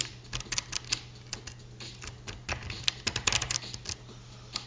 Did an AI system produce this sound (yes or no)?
no